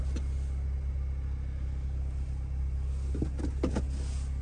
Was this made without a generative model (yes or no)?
yes